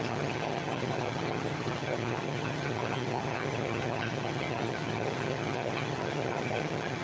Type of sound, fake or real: fake